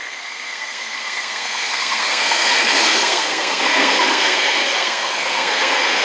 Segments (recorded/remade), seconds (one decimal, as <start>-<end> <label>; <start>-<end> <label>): 0.0-6.0 remade